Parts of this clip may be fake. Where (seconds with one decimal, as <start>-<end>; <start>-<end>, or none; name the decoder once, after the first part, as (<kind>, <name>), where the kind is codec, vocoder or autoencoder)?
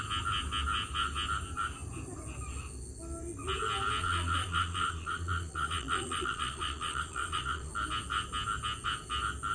4.0-7.7 (vocoder, Vocos)